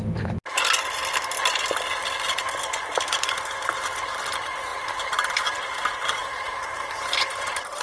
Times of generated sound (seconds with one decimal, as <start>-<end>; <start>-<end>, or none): 6.2-7.8